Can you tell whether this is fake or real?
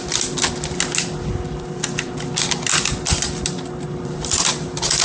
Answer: real